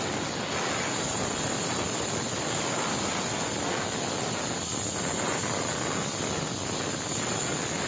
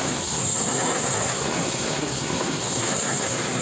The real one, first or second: first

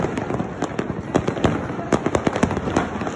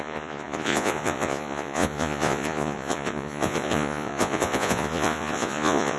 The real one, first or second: first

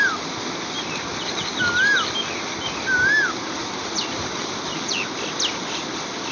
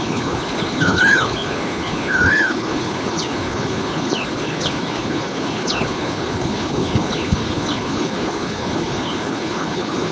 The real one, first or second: first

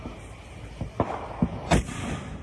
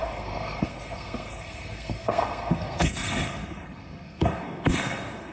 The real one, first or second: first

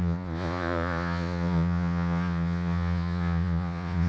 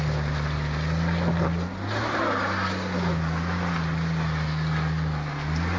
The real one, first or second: second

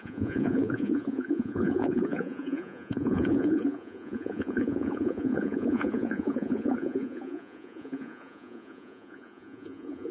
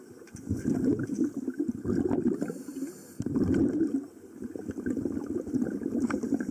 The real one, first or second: second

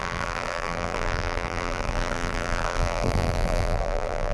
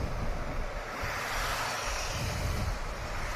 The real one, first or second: second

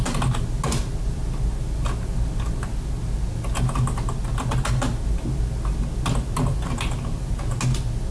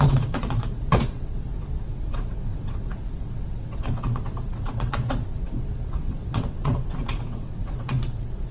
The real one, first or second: first